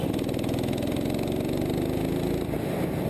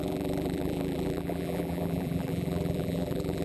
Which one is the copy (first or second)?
second